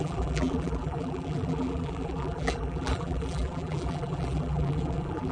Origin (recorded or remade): remade